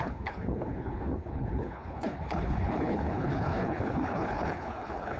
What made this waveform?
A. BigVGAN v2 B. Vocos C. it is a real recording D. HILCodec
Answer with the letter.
D